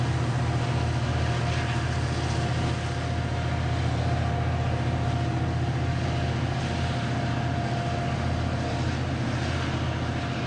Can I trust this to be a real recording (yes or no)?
yes